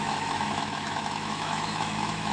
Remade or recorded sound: remade